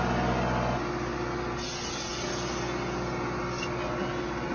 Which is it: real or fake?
real